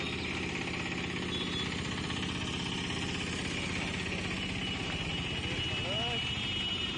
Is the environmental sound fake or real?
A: real